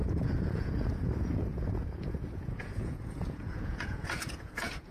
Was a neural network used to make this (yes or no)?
yes